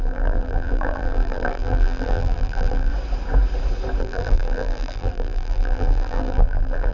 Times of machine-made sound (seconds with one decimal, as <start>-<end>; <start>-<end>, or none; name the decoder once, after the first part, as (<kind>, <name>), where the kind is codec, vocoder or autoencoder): 0.0-2.9 (vocoder, BigVGAN v2); 4.0-6.9

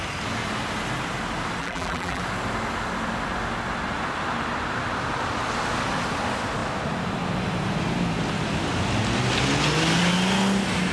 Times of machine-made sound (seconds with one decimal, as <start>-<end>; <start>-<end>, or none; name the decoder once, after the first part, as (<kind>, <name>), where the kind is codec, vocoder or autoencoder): 1.6-2.2 (vocoder, BigVGAN v2)